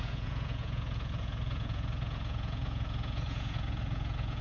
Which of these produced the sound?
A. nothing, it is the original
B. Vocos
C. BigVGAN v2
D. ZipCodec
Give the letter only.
B